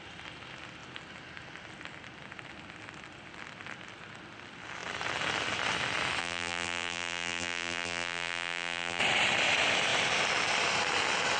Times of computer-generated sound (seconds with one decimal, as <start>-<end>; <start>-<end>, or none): 6.2-9.0